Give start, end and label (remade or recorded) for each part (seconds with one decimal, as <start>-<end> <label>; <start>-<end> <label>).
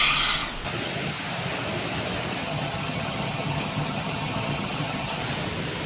0.0-2.4 recorded; 2.4-5.2 remade; 5.2-5.9 recorded